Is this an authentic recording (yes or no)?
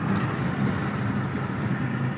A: yes